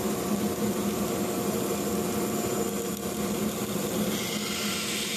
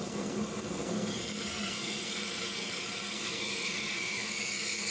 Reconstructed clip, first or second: second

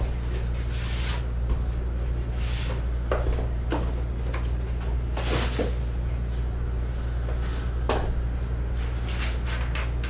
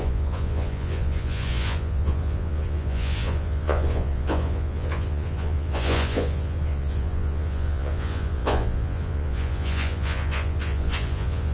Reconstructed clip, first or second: second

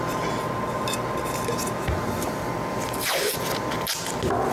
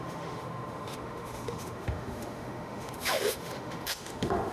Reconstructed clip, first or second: second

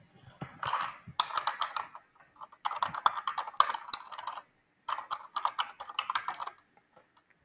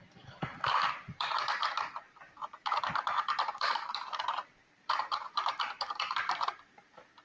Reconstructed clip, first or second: second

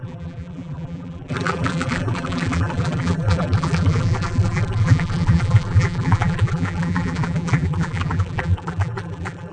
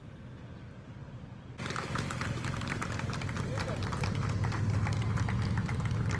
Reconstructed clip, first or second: first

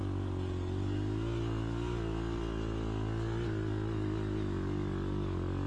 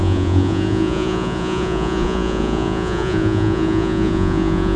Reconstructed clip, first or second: second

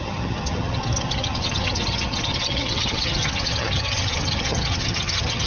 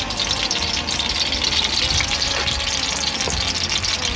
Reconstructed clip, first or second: first